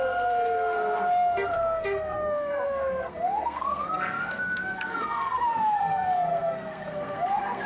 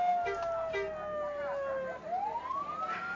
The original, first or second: second